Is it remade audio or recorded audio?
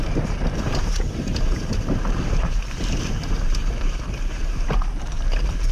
remade